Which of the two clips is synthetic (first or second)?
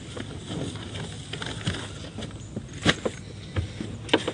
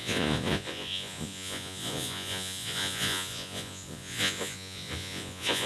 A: second